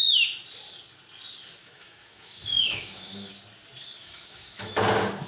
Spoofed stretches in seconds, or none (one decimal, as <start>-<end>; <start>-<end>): 1.6-3.3; 4.0-4.8